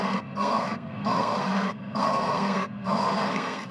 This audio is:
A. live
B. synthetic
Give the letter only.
B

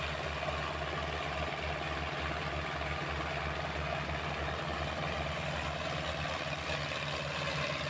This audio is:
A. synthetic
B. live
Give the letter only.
B